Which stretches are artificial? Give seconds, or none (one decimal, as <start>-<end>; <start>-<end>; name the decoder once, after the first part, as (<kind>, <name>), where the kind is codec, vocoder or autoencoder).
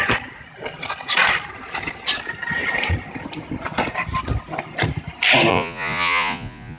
5.5-6.8 (vocoder, Vocos)